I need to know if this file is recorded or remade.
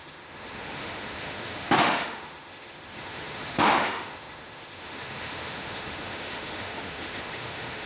remade